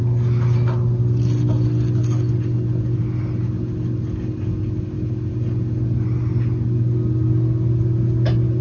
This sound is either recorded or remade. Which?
recorded